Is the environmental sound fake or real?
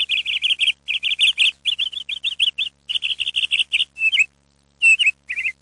real